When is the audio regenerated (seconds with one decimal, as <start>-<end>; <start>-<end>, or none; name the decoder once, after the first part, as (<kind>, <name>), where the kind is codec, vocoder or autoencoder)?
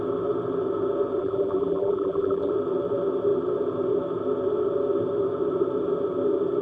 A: 1.2-2.5 (vocoder, BigVGAN v2)